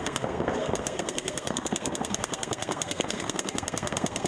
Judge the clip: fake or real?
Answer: fake